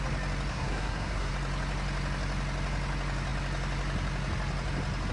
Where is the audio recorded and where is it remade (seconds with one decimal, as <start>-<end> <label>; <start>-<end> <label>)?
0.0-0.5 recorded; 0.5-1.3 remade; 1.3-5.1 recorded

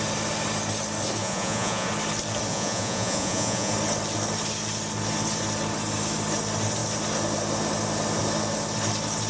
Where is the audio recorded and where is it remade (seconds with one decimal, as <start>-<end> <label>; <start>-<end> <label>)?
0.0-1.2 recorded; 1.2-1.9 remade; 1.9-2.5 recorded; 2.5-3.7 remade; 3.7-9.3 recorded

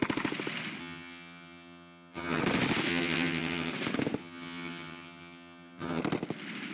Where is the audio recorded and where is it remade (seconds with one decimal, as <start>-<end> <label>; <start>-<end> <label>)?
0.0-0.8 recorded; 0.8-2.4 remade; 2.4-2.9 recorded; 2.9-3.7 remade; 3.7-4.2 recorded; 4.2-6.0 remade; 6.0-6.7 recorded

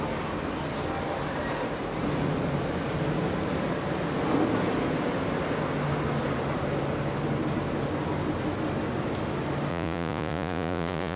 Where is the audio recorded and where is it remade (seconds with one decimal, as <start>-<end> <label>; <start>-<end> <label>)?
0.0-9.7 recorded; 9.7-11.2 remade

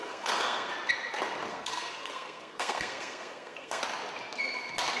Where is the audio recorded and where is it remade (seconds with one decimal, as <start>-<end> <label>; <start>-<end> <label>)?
0.0-0.7 remade; 0.7-1.5 recorded; 1.5-3.8 remade; 3.8-5.0 recorded

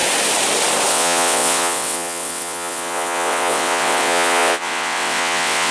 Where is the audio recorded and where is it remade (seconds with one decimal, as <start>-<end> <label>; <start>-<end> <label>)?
0.0-0.9 recorded; 0.9-5.7 remade

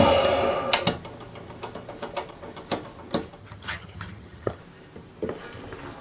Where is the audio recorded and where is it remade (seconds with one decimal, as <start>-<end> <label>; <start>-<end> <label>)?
0.0-3.4 recorded; 3.4-4.6 remade; 4.6-6.0 recorded